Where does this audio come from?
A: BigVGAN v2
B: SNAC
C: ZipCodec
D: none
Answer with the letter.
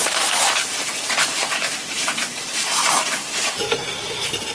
A